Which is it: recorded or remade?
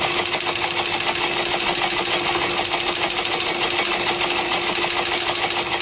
recorded